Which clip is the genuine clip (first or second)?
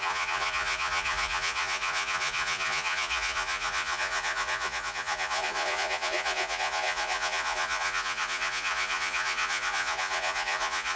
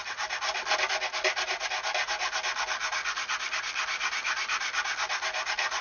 second